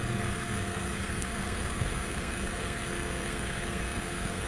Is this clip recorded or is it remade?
remade